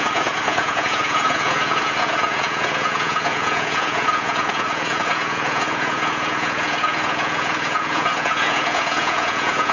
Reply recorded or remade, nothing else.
remade